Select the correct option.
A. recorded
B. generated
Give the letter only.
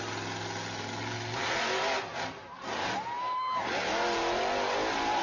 A